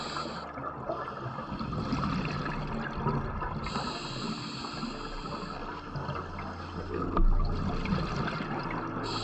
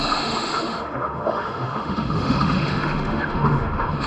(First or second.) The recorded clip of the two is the first